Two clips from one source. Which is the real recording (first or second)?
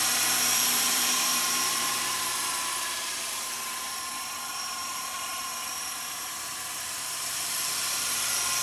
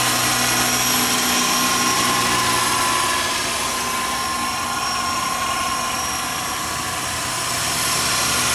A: second